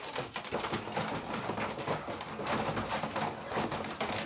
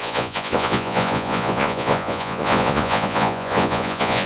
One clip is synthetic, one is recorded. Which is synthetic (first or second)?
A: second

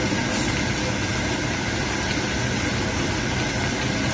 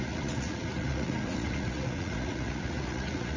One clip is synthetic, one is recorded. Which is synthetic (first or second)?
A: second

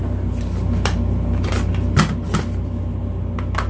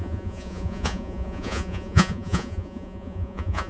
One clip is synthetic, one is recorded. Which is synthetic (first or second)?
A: second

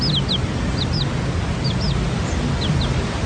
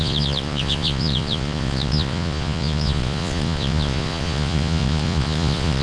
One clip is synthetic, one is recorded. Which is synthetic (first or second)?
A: second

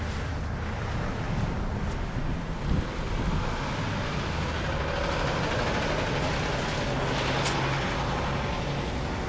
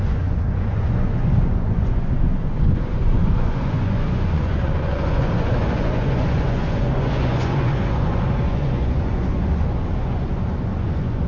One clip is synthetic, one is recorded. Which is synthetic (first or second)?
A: second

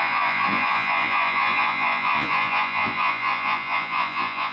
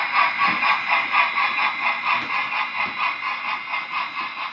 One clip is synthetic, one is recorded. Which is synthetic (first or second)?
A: first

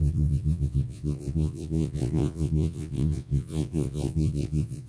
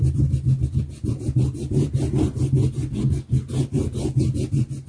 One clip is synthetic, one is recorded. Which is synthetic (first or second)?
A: first